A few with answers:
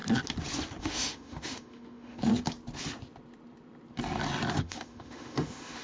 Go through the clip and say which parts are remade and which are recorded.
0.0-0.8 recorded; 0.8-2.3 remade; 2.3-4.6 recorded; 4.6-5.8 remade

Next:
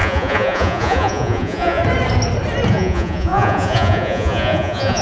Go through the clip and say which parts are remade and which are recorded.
0.0-1.8 remade; 1.8-2.7 recorded; 2.7-5.0 remade

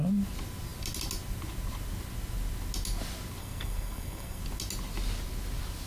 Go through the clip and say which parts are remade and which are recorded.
0.0-3.4 recorded; 3.4-4.4 remade; 4.4-5.9 recorded

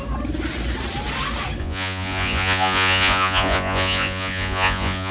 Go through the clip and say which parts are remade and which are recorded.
0.0-1.6 recorded; 1.6-5.1 remade

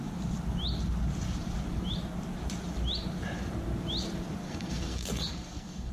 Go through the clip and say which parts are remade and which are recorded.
0.0-4.4 recorded; 4.4-5.9 remade

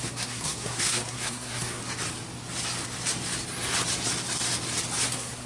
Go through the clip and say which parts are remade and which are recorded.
0.0-1.8 remade; 1.8-5.1 recorded; 5.1-5.5 remade